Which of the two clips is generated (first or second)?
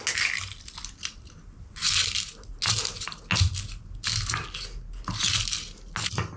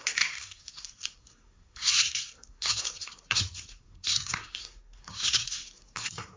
second